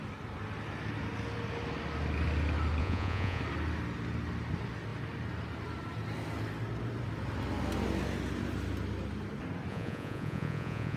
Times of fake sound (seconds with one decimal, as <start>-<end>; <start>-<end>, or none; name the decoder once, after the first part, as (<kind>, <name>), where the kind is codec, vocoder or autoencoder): 2.8-3.4 (vocoder, Vocos); 9.7-11.0